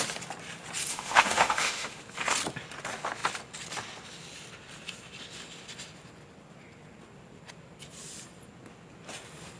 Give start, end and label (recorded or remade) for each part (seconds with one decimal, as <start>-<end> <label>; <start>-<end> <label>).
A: 0.0-0.9 recorded; 0.9-2.0 remade; 2.0-9.6 recorded